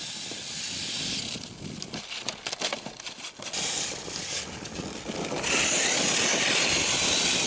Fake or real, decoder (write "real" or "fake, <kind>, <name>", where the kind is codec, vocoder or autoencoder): real